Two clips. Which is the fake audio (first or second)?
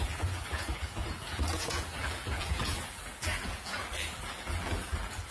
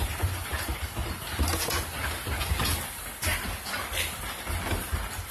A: first